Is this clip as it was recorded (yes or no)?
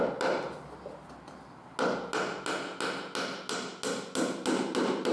yes